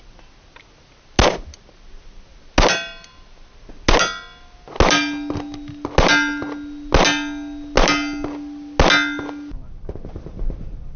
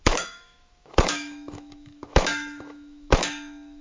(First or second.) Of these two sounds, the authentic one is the first